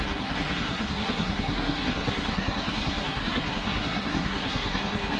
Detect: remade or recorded remade